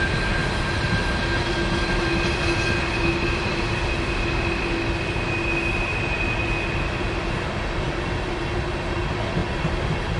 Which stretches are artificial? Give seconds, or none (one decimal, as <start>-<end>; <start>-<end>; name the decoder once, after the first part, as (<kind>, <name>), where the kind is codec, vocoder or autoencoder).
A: none